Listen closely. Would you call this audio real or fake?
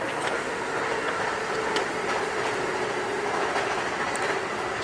real